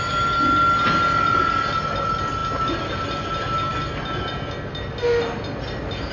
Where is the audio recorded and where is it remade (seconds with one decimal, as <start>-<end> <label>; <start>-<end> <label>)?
0.0-6.1 recorded